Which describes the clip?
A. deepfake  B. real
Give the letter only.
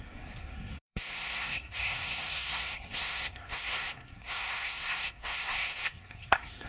A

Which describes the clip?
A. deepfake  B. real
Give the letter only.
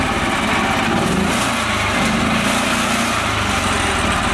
B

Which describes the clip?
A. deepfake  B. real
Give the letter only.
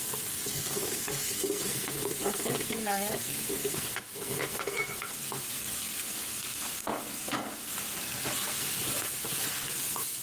A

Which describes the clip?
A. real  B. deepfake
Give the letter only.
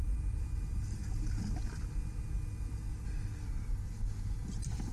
A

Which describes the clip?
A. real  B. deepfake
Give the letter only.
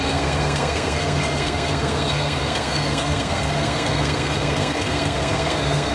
B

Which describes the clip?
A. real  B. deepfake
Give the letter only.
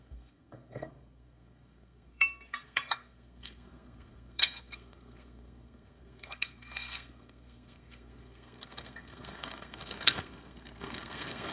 B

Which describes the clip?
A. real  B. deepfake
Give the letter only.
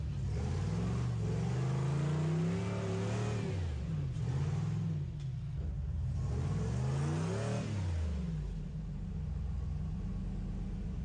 A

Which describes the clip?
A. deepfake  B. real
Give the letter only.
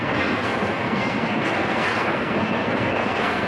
A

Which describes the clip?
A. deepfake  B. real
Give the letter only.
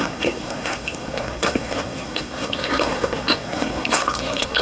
A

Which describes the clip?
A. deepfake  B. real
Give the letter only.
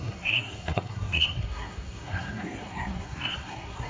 A